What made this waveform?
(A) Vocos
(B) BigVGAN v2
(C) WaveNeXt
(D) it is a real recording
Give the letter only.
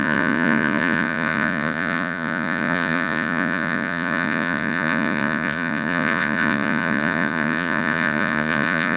A